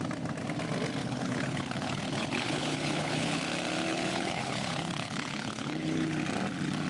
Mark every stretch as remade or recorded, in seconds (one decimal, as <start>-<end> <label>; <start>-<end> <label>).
0.0-1.0 recorded; 1.0-3.4 remade; 3.4-3.9 recorded; 3.9-6.2 remade; 6.2-6.9 recorded